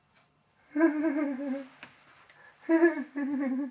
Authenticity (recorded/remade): recorded